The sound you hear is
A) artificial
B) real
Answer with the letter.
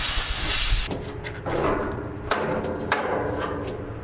B